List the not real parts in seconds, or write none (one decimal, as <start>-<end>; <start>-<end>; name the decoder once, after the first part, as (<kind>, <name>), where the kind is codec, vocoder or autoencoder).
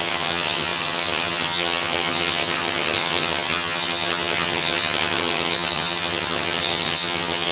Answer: 0.0-7.5 (vocoder, HiFi-GAN)